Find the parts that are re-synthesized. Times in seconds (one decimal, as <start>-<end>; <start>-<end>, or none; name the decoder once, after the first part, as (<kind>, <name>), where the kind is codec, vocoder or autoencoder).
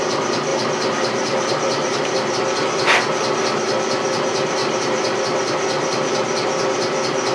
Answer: 0.5-2.3 (vocoder, BigVGAN v2); 4.6-5.2